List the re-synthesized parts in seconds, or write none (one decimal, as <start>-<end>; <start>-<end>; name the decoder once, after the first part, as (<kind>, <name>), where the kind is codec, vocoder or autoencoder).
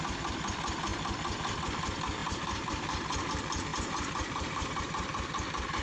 2.2-3.3 (vocoder, BigVGAN v2); 3.7-4.8